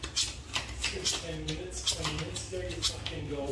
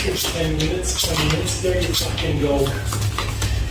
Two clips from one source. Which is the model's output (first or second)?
first